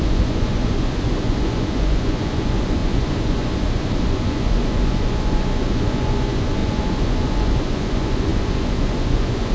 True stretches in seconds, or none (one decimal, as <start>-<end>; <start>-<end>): none